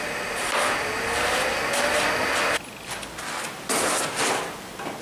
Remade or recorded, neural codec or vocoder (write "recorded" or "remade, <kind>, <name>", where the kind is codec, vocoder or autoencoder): recorded